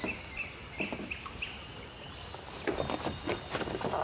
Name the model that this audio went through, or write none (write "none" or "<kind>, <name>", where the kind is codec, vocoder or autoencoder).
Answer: none